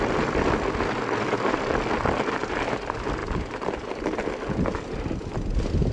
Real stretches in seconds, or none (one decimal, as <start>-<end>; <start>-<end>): 0.0-5.9